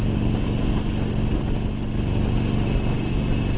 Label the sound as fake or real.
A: real